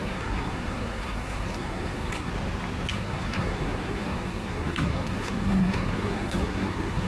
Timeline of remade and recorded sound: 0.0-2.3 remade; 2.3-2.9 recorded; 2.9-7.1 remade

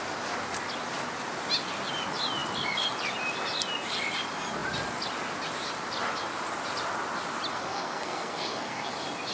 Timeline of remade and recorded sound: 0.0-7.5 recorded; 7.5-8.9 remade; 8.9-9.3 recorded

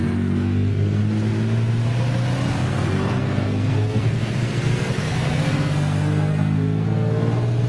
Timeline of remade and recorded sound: 0.0-1.0 remade; 1.0-2.5 recorded; 2.5-7.7 remade

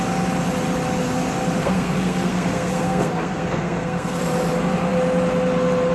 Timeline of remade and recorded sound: 0.0-1.6 recorded; 1.6-4.2 remade; 4.2-5.9 recorded

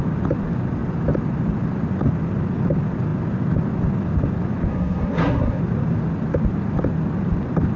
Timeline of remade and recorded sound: 0.0-4.7 recorded; 4.7-5.6 remade; 5.6-7.8 recorded